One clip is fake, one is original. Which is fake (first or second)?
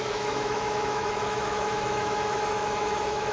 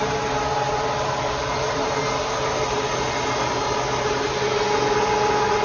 first